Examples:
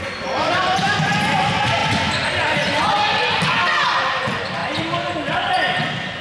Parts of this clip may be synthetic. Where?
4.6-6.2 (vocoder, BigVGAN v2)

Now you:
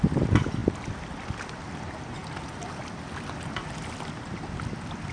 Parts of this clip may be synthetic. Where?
none